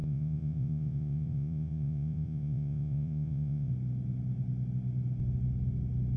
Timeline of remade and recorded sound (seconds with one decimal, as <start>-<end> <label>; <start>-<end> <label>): 0.0-3.7 remade; 3.7-6.2 recorded